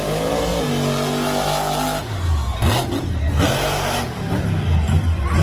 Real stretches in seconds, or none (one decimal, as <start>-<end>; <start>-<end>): 0.0-5.4

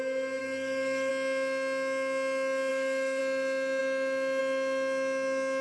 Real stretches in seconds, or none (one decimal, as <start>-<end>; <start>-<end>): 0.0-0.4; 1.1-2.7; 3.2-5.6

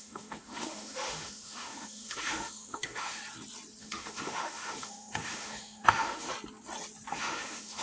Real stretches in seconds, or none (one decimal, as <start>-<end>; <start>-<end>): 3.2-3.8; 6.3-7.1

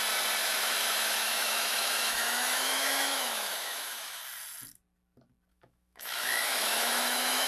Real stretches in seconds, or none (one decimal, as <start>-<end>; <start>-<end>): 0.0-0.4; 4.2-5.5